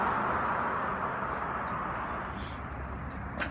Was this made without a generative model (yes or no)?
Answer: yes